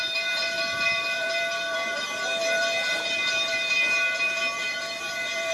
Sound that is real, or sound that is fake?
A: fake